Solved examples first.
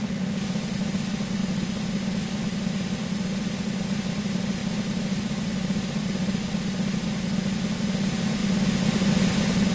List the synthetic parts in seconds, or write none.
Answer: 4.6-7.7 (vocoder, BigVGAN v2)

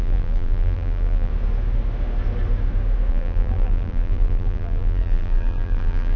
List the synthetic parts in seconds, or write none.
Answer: 0.0-1.3 (vocoder, BigVGAN v2); 3.1-6.2